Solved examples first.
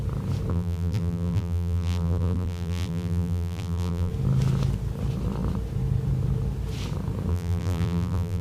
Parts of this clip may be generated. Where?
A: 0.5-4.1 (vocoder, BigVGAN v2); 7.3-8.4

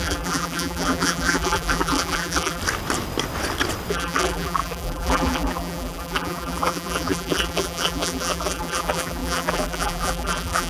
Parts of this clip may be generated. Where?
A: 0.0-2.6 (vocoder, BigVGAN v2); 3.9-10.7

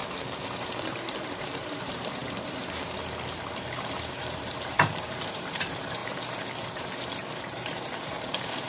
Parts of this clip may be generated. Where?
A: 0.9-2.2 (vocoder, BigVGAN v2); 3.4-6.0; 7.5-8.7